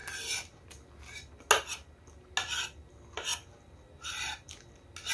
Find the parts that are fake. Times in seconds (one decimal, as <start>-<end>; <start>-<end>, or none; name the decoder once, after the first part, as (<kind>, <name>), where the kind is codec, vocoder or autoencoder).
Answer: none